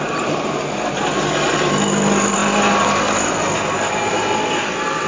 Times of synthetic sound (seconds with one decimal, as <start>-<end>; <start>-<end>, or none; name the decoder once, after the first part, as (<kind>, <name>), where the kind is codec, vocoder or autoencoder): none